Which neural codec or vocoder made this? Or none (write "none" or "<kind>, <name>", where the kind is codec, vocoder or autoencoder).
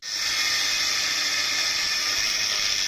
none